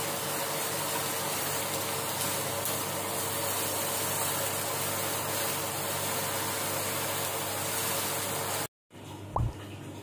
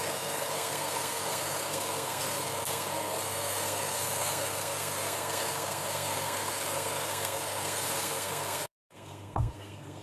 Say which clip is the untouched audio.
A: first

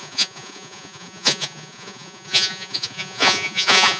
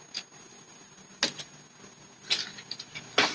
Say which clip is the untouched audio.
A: second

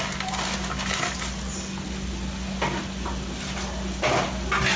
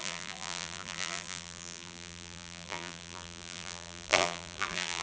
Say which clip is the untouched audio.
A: first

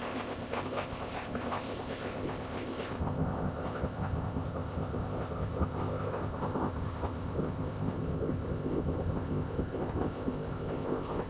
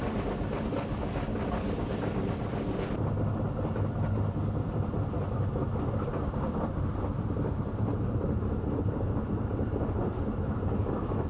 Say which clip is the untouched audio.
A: second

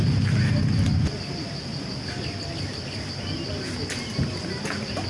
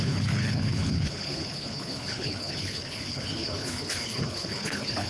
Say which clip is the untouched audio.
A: first